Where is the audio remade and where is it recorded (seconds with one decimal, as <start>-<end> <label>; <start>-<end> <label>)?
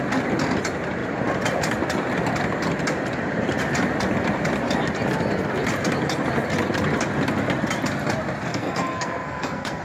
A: 0.0-8.5 recorded; 8.5-9.8 remade